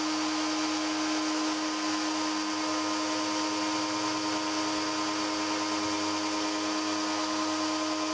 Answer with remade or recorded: recorded